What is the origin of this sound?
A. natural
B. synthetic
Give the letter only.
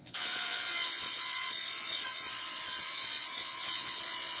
B